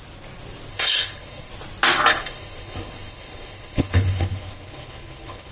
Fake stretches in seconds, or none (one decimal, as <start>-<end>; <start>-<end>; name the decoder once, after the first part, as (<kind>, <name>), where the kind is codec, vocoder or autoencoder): 0.7-1.5 (codec, HILCodec); 2.1-5.5